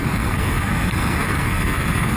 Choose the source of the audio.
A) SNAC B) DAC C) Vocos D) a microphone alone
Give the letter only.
A